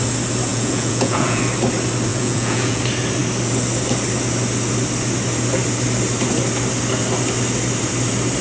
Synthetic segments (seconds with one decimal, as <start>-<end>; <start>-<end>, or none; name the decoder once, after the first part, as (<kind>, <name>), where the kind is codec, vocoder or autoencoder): 0.5-1.4 (vocoder, Vocos); 2.1-2.8